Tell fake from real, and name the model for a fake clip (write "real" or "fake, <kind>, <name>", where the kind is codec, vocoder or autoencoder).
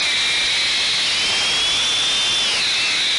real